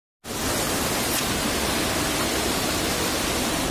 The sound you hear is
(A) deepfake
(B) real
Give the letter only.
B